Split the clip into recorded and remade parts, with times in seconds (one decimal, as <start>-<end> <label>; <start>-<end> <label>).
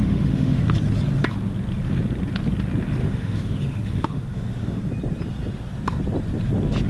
0.0-0.6 remade; 0.6-3.0 recorded; 3.0-4.8 remade; 4.8-6.9 recorded